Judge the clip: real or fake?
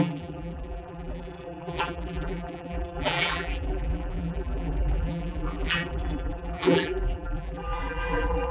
fake